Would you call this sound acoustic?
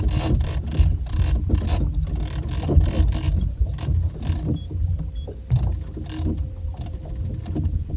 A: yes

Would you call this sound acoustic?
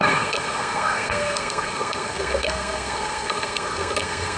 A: no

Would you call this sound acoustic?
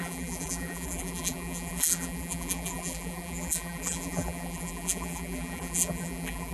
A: no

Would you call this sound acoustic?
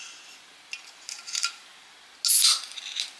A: yes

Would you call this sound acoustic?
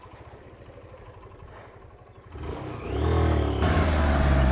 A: yes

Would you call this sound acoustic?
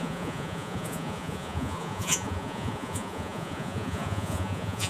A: no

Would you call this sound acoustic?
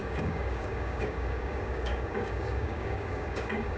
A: no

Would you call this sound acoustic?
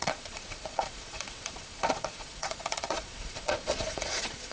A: no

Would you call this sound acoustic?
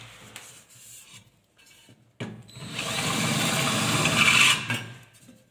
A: yes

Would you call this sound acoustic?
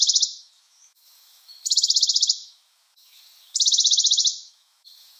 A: no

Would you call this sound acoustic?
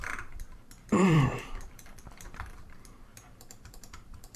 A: no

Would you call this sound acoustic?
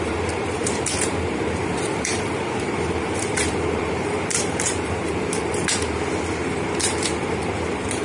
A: no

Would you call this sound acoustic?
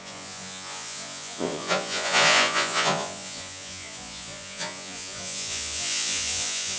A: no